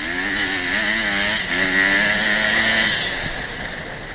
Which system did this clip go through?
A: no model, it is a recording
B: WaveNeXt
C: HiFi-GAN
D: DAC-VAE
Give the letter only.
A